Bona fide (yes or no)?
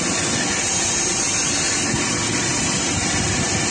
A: yes